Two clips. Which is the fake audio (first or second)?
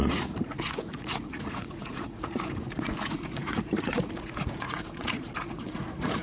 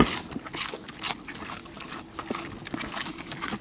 first